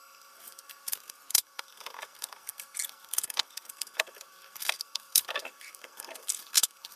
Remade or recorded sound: remade